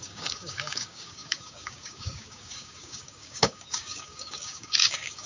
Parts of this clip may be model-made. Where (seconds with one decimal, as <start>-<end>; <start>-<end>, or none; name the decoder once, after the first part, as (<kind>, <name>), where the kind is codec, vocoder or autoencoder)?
0.0-5.3 (codec, DAC)